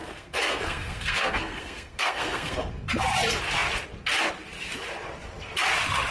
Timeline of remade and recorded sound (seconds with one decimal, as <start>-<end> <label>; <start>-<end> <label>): 0.0-2.7 remade; 2.7-6.1 recorded